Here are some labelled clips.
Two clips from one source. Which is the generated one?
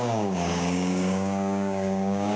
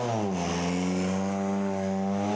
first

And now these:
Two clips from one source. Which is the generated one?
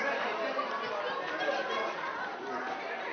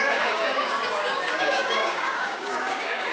second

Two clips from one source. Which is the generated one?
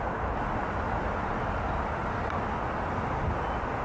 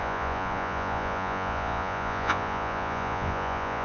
second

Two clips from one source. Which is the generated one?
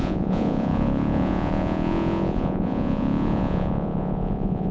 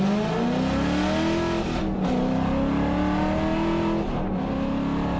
first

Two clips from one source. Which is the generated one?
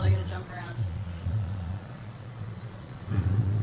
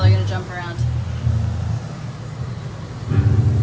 first